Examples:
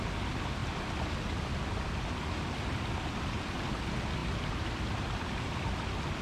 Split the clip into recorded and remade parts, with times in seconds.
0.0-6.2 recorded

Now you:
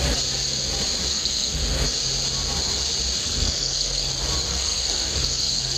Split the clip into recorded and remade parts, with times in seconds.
0.0-1.1 recorded; 1.1-1.6 remade; 1.6-3.2 recorded; 3.2-4.1 remade; 4.1-4.5 recorded; 4.5-5.8 remade

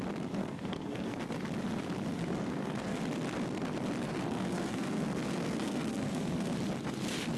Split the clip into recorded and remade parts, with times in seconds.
0.0-0.4 recorded; 0.4-1.2 remade; 1.2-2.3 recorded; 2.3-3.0 remade; 3.0-4.2 recorded; 4.2-6.5 remade; 6.5-7.4 recorded

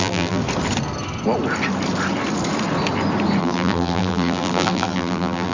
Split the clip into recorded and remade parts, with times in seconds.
0.0-0.4 remade; 0.4-3.4 recorded; 3.4-5.5 remade

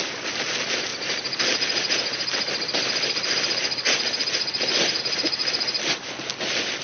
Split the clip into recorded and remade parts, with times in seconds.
0.0-6.8 recorded